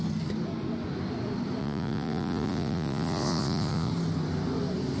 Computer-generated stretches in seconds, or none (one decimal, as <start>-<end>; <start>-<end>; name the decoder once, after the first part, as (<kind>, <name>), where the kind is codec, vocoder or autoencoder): 1.6-3.9 (vocoder, Vocos)